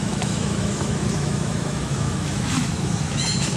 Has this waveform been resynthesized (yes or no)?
yes